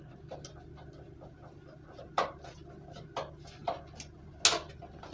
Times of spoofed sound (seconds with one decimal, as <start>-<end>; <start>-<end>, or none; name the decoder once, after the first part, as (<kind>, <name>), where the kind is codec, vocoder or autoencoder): none

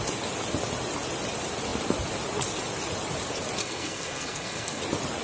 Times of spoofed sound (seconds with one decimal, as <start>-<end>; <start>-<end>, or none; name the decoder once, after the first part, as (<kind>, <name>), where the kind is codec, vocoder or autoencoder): 3.6-4.8 (codec, SNAC)

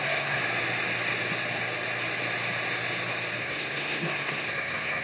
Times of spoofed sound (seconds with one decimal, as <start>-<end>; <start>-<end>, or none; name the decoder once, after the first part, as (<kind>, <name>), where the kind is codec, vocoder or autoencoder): 0.0-0.4 (codec, SNAC); 3.4-5.0

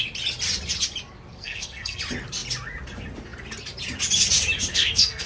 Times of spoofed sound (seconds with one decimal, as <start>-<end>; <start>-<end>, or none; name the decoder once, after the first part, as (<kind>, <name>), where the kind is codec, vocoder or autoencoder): 1.3-2.0 (codec, SNAC); 4.7-5.3